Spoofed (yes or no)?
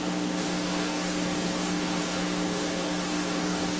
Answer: yes